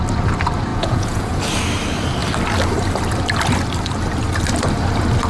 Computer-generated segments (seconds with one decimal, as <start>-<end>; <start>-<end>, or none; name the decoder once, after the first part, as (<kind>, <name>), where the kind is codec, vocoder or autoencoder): 0.7-1.4 (vocoder, Vocos)